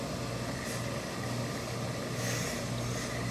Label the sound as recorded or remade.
recorded